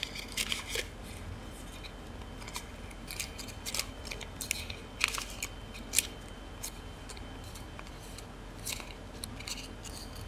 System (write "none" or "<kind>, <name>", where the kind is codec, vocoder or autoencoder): none